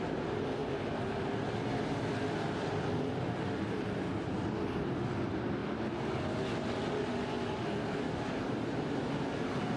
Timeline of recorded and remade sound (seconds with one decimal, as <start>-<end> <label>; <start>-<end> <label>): 0.0-0.6 recorded; 0.6-4.5 remade; 4.5-9.8 recorded